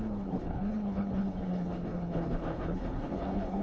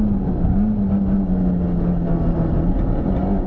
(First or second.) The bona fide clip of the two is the second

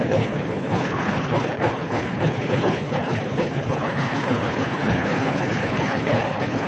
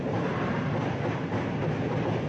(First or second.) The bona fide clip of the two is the second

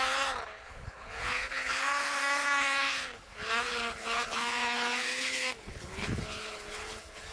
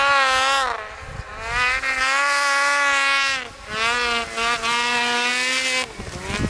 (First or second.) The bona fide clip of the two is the second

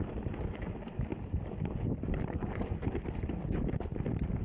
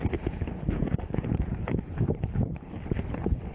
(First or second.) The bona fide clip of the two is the first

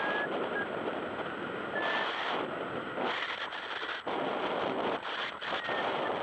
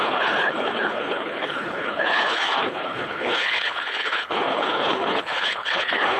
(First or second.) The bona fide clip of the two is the first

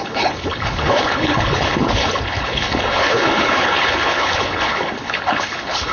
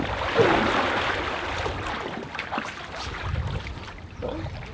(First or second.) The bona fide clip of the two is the second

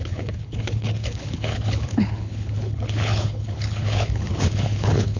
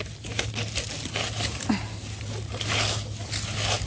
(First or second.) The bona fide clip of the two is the second